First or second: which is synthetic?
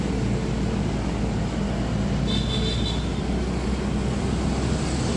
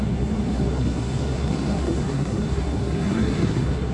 second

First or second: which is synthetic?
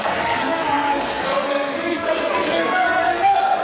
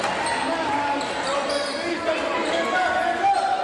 first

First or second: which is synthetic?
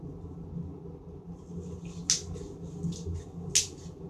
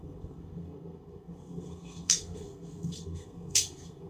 second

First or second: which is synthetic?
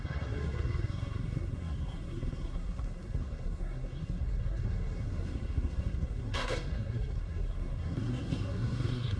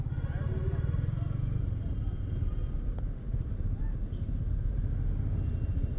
first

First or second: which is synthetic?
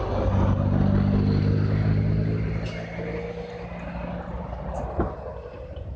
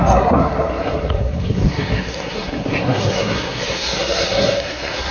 second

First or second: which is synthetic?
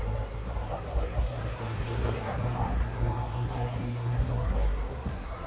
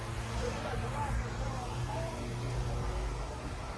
first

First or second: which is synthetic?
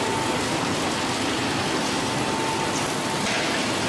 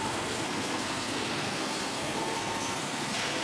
second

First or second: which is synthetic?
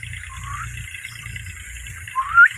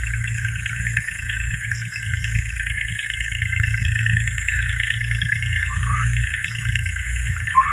second